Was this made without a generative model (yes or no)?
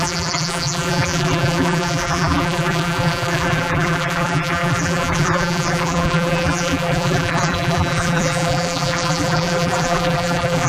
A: no